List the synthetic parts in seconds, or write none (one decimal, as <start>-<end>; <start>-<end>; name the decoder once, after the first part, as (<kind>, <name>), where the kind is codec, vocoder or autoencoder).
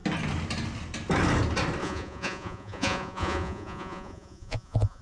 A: 1.8-5.0 (vocoder, Vocos)